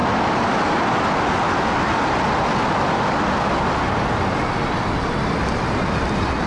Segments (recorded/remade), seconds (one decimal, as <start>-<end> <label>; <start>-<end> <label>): 0.0-6.5 recorded